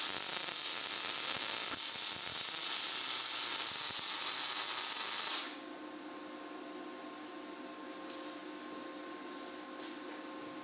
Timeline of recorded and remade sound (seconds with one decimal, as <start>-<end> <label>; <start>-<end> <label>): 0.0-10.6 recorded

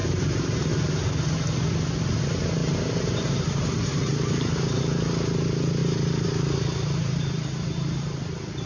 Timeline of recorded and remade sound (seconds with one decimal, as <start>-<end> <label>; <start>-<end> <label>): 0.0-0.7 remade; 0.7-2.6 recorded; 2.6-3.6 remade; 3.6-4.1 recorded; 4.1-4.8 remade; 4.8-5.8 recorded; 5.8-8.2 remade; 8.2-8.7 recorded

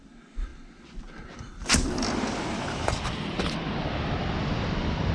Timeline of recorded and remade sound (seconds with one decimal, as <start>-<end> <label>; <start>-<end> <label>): 0.0-1.6 recorded; 1.6-5.1 remade

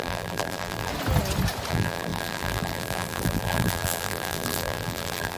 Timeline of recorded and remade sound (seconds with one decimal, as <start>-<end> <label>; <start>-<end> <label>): 0.0-0.9 remade; 0.9-1.7 recorded; 1.7-5.4 remade

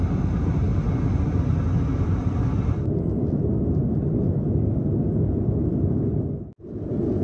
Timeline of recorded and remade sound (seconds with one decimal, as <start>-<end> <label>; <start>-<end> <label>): 0.0-0.7 remade; 0.7-1.9 recorded; 1.9-4.0 remade; 4.0-6.6 recorded; 6.6-7.2 remade